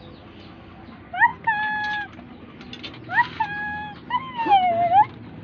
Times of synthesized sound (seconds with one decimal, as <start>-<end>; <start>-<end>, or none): none